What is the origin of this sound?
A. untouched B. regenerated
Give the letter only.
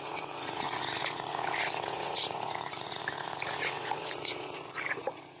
B